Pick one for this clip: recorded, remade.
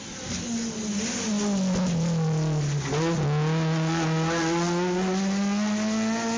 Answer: recorded